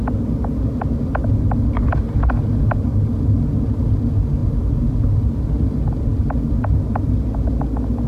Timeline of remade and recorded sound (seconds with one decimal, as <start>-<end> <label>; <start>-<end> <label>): 0.0-8.1 recorded

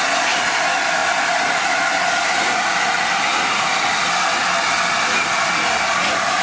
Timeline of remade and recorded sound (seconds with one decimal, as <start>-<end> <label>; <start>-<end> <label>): 0.0-6.4 recorded

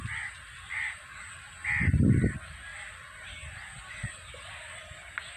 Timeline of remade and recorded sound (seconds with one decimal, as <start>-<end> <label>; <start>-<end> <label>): 0.0-5.4 recorded

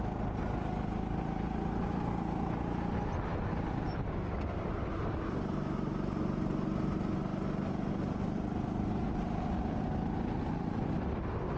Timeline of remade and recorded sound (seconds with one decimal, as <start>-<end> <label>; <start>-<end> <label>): 0.0-11.6 recorded

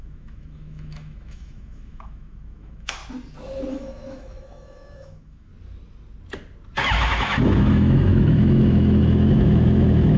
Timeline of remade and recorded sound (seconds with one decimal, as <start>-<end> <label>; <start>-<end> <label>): 0.0-3.0 remade; 3.0-3.7 recorded; 3.7-5.5 remade; 5.5-6.8 recorded; 6.8-10.2 remade

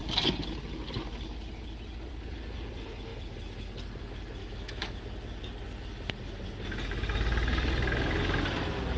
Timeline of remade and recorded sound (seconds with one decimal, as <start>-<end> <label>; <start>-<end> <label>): 0.0-4.4 recorded; 4.4-5.0 remade; 5.0-9.0 recorded

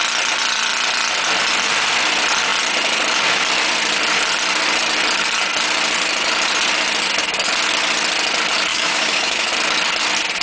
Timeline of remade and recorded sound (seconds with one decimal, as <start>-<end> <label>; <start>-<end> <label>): 0.0-8.7 recorded; 8.7-9.5 remade; 9.5-10.4 recorded

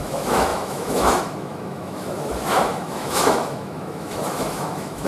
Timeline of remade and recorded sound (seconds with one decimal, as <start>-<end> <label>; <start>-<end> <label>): 0.0-5.1 remade